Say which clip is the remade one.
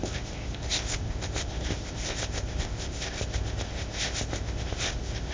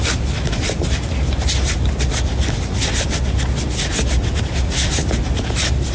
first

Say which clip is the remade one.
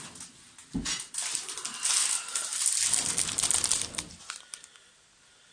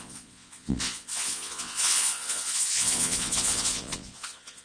second